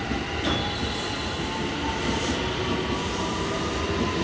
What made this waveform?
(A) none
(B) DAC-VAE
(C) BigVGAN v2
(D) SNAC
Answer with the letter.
A